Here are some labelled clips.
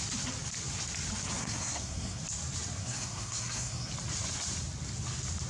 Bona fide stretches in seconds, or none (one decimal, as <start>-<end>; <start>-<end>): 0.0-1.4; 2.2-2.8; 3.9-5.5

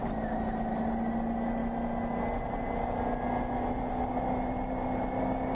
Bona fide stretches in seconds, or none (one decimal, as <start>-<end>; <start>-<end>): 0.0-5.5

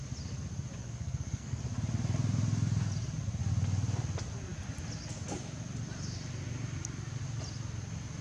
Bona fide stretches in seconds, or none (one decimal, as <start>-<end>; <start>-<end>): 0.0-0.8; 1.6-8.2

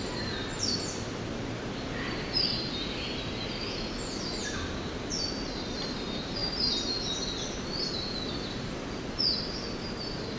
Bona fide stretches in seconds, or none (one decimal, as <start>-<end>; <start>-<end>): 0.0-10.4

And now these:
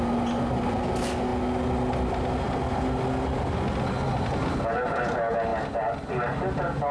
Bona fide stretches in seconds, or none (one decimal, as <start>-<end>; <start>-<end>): 0.0-6.9

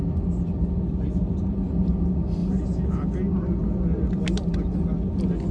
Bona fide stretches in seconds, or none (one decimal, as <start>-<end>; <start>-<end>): 0.0-5.5

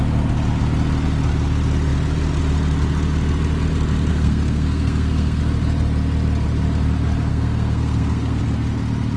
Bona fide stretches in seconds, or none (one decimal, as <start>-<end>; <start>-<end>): 0.0-4.1; 5.4-7.3; 8.4-9.2

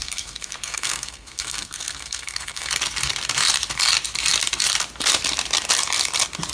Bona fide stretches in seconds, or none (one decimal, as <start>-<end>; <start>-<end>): 2.7-6.5